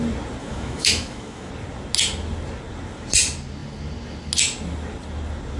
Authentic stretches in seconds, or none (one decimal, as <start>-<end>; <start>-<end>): 0.0-0.4; 1.5-5.6